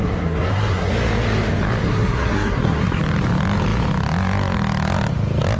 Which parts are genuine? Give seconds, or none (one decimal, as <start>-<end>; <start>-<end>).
0.9-1.8; 3.0-5.6